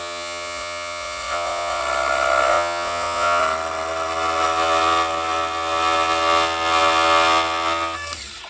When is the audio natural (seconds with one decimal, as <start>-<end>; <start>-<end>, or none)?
1.8-2.5; 3.4-8.5

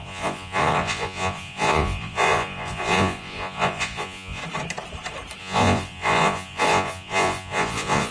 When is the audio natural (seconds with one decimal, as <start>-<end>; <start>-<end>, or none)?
4.4-5.4

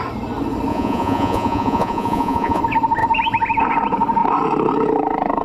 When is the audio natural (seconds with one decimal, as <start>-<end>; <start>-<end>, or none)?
0.0-0.7; 2.6-5.4

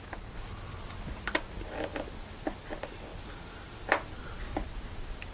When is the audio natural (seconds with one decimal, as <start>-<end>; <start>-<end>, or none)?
0.0-5.3

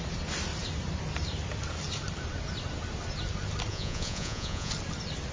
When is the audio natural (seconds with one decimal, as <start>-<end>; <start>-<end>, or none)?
0.0-3.7; 4.7-5.3

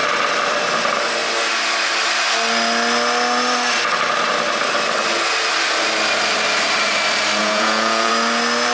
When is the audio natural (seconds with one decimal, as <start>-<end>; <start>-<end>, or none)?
0.0-7.4; 8.1-8.7

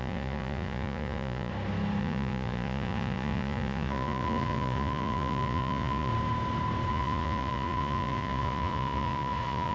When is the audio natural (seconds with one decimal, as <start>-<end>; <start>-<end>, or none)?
1.5-2.0; 6.1-6.9